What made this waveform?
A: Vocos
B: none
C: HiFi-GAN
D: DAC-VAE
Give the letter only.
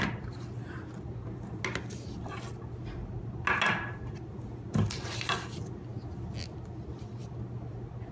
B